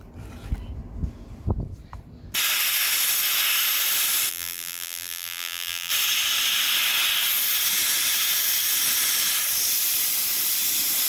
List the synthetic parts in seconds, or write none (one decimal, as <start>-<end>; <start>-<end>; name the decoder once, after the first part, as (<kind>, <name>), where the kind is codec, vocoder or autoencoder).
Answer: 4.3-5.9 (vocoder, BigVGAN v2)